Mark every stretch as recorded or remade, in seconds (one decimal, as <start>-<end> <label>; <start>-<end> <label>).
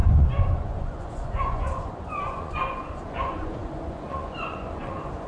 0.0-5.3 remade